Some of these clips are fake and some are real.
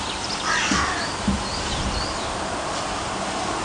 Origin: real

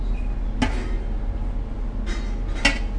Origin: real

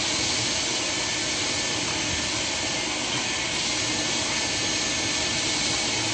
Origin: real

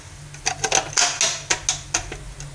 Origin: real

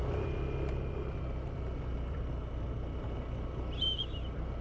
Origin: real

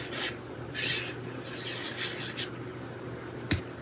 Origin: real